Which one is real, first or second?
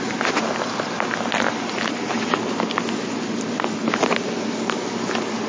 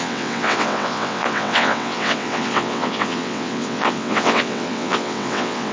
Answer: first